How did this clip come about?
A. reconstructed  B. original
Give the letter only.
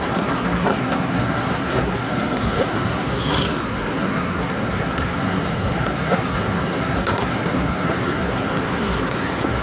A